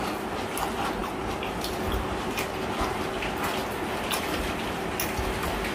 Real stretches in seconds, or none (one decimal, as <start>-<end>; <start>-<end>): 0.0-1.0; 2.4-5.7